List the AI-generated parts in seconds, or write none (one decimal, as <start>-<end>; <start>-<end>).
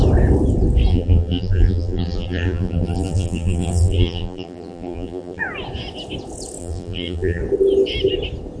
0.9-5.4; 6.6-7.4